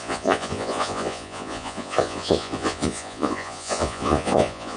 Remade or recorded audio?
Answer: remade